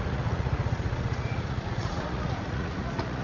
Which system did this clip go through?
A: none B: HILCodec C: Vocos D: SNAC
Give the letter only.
C